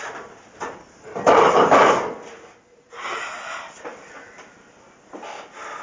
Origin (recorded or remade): recorded